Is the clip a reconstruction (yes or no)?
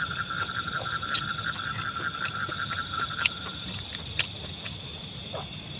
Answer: no